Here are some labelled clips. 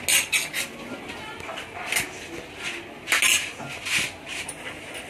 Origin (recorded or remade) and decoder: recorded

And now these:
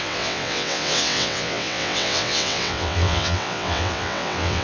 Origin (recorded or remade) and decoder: remade, vocoder, WaveNeXt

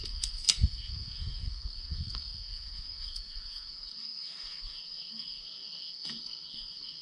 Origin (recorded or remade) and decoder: remade, codec, SNAC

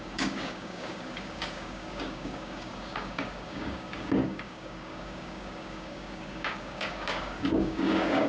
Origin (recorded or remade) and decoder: remade, codec, DAC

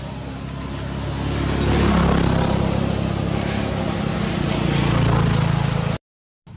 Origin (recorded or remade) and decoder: recorded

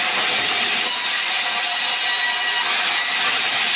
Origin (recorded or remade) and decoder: recorded